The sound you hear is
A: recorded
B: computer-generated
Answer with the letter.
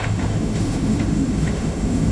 B